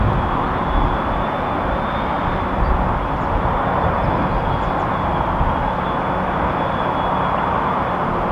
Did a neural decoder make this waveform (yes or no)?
no